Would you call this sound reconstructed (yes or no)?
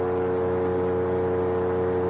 no